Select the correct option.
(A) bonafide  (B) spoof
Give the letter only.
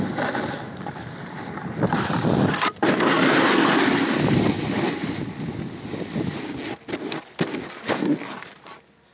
A